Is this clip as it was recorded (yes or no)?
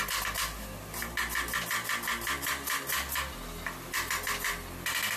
yes